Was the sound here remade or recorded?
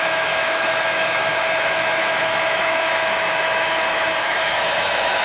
remade